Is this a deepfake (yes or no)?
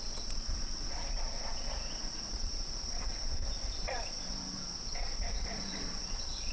yes